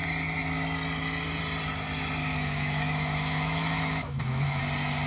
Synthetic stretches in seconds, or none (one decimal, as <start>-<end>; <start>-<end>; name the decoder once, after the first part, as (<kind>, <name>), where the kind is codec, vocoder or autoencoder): 2.2-4.6 (autoencoder, DAC-VAE)